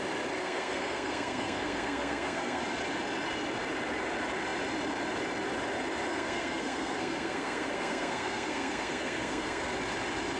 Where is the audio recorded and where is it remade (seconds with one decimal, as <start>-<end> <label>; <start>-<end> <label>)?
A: 0.0-0.4 recorded; 0.4-2.6 remade; 2.6-6.1 recorded; 6.1-9.6 remade; 9.6-10.4 recorded